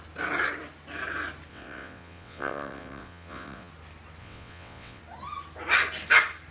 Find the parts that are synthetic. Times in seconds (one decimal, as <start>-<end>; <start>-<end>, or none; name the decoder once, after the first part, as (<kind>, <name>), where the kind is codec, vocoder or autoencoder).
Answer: 1.5-3.7 (vocoder, WaveNeXt); 4.2-5.0